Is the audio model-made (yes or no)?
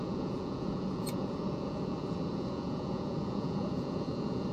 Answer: yes